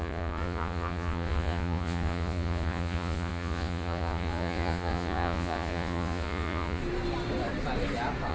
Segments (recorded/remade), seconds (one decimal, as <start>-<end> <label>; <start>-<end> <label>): 0.0-6.8 remade; 6.8-8.3 recorded